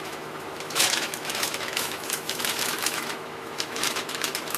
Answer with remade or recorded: remade